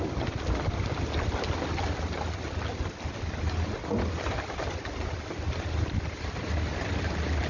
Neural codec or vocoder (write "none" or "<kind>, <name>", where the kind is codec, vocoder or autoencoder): none